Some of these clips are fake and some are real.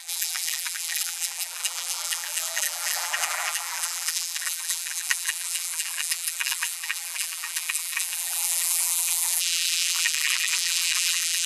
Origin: fake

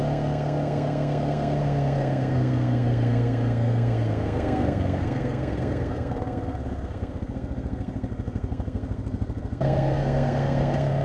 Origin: fake